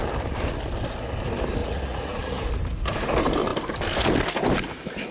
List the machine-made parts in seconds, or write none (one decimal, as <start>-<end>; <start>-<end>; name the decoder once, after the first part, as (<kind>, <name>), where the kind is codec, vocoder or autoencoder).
1.6-2.4 (vocoder, Vocos)